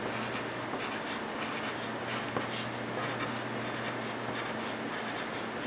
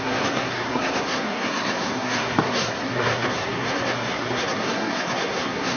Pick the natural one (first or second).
first